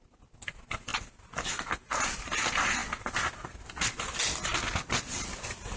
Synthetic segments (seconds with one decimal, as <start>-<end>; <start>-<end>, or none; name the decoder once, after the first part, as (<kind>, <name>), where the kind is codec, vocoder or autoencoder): none